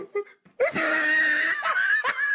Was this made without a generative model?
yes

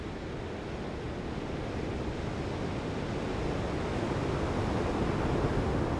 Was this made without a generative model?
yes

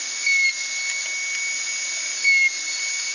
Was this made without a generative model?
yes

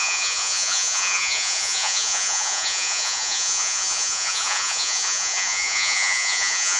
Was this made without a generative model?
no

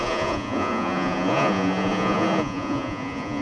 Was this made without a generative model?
no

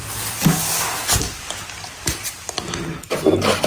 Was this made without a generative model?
yes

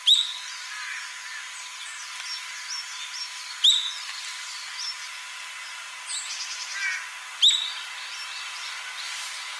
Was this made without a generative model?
yes